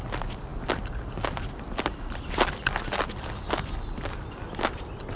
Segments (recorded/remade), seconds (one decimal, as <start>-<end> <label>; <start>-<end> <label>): 0.0-5.2 recorded